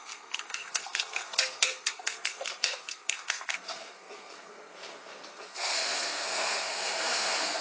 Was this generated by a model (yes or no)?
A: yes